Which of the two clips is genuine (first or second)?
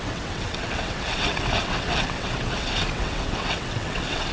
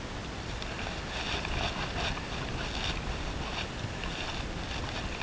second